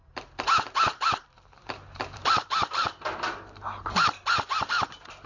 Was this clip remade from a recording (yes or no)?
yes